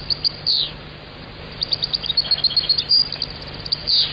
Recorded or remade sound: recorded